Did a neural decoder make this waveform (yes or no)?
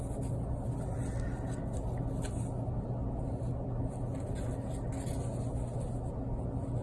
no